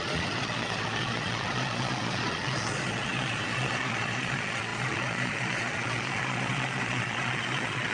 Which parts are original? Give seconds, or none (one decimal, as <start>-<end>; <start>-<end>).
none